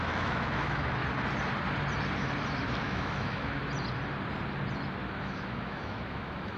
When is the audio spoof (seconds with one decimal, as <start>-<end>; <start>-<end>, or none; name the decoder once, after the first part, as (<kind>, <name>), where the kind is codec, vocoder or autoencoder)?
0.0-1.0 (autoencoder, DAC-VAE); 2.8-3.6; 5.2-6.6